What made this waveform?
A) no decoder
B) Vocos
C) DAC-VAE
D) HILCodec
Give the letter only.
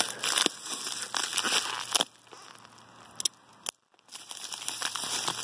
A